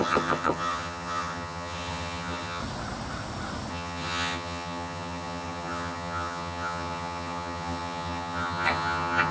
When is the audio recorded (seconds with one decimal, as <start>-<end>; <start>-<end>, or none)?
2.6-3.7